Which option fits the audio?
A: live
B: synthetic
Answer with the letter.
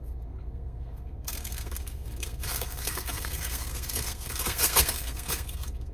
B